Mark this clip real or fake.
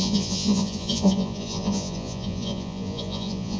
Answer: fake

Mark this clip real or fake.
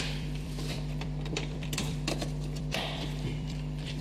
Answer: fake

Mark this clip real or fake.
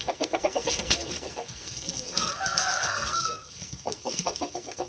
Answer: fake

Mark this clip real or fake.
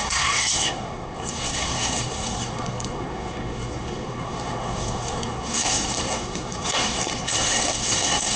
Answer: fake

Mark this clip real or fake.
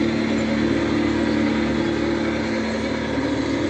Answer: real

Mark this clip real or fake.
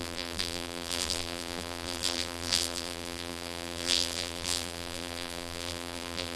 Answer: fake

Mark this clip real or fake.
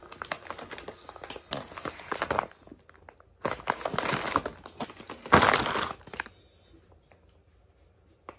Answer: real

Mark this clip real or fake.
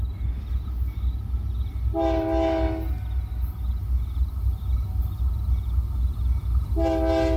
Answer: real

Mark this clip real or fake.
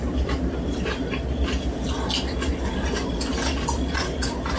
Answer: real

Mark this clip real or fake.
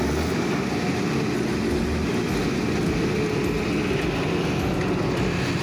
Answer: real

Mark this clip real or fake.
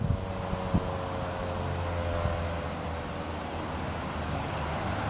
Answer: real